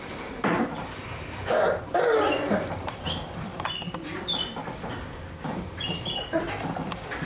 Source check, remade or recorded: remade